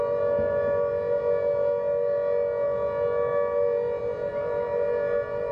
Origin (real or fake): real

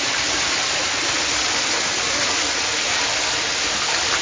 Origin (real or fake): real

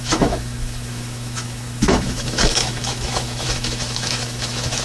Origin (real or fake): fake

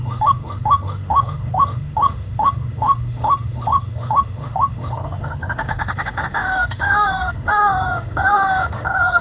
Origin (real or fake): fake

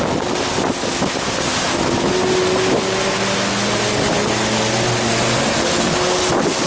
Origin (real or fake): real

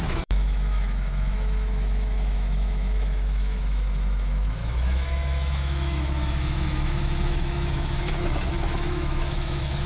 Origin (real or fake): fake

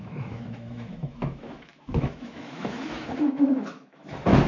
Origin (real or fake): fake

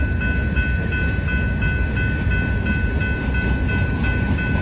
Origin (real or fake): real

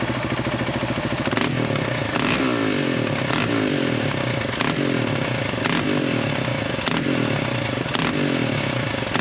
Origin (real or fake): real